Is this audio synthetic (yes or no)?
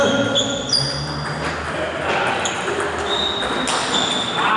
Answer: no